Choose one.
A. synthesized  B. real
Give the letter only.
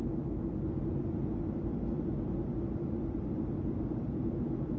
B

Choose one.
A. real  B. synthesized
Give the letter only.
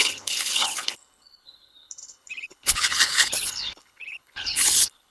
B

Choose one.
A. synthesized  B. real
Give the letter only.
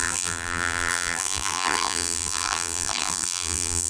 A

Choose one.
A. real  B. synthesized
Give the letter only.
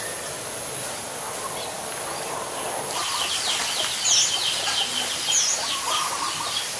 A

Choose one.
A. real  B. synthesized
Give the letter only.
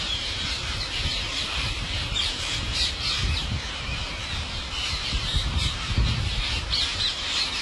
B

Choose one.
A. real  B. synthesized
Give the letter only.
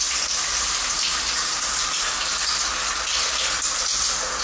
A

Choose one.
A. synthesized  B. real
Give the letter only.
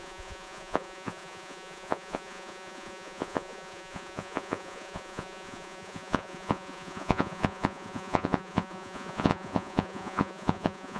A